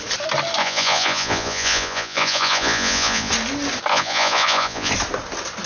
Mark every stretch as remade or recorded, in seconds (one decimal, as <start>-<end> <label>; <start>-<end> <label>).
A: 0.0-0.6 recorded; 0.6-3.3 remade; 3.3-3.9 recorded; 3.9-4.9 remade; 4.9-5.7 recorded